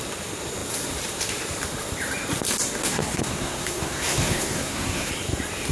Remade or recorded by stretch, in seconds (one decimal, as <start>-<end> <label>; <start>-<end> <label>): 0.0-2.8 recorded; 2.8-5.1 remade; 5.1-5.7 recorded